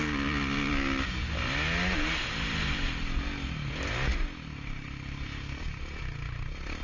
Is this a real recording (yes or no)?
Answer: yes